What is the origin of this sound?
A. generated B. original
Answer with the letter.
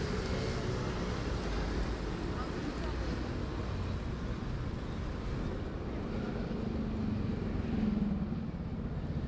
B